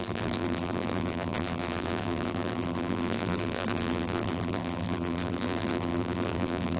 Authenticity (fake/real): fake